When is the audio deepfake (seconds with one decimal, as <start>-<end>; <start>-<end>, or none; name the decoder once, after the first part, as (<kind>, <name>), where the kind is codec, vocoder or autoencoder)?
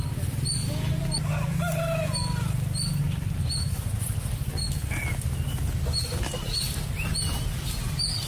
none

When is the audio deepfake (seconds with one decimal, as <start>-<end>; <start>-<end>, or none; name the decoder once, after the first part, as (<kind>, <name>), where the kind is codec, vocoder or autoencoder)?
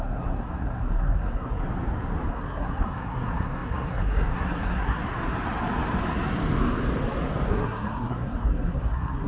0.0-1.6 (codec, SNAC); 2.3-5.0; 7.5-9.3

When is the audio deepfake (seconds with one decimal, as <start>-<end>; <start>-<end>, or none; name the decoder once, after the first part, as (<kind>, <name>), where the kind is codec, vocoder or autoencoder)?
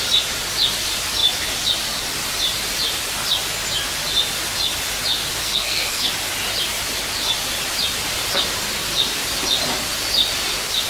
5.4-6.1 (codec, SNAC)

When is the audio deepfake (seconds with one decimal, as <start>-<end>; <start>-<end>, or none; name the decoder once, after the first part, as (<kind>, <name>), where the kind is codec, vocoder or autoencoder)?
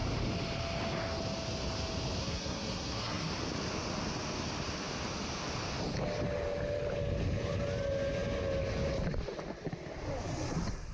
2.2-3.3 (codec, SNAC)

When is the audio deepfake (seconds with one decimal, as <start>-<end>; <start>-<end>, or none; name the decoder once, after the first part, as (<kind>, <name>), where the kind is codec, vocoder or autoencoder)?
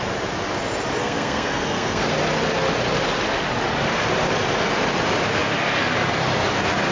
1.0-2.1 (codec, SNAC)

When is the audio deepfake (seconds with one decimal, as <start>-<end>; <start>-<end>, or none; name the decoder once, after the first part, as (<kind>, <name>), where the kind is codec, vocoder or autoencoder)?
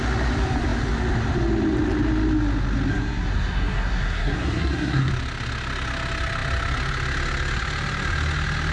2.9-5.1 (codec, SNAC)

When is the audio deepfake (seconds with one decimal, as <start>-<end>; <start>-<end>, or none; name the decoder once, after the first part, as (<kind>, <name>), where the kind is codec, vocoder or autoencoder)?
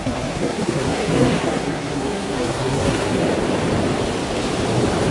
0.0-3.2 (codec, SNAC)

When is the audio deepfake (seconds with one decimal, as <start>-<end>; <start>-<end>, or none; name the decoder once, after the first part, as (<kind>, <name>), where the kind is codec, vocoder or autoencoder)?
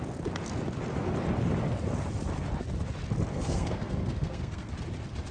3.3-4.7 (codec, SNAC)